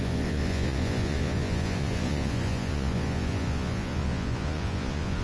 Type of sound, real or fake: fake